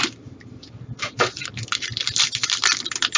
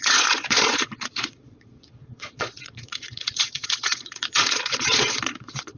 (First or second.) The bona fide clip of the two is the first